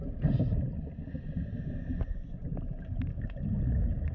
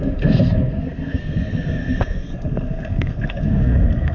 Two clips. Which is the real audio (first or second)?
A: first